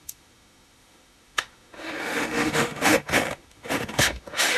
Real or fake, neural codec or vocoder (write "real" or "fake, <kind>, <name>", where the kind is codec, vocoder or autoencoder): fake, autoencoder, DAC-VAE